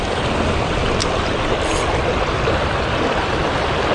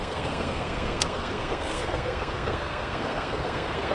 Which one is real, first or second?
first